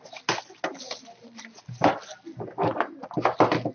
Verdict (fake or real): real